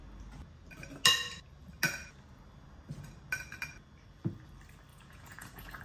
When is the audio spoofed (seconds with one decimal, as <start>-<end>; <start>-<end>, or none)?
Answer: 4.9-5.8